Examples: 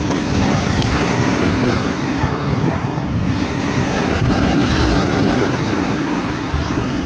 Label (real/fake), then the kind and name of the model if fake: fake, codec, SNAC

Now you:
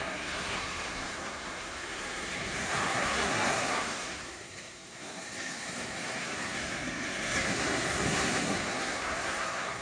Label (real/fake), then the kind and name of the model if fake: fake, codec, SNAC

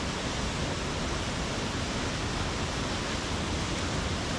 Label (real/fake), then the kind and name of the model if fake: real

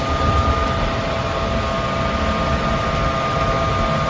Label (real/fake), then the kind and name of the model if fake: real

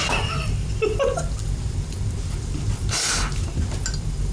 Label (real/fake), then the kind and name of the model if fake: real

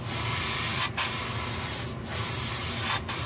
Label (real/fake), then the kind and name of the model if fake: real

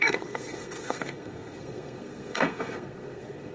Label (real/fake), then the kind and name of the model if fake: fake, codec, SNAC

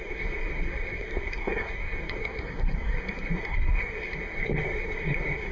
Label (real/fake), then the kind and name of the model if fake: fake, codec, SNAC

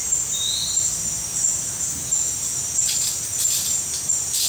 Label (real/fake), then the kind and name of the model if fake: real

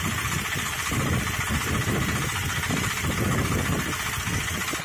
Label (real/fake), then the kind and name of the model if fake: real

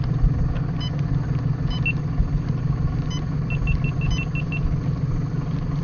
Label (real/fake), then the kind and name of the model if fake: real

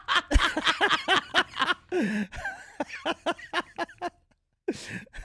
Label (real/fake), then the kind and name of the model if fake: real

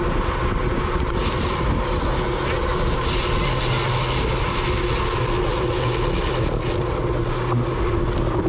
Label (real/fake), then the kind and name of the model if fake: real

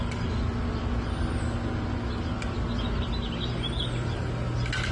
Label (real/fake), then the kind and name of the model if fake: real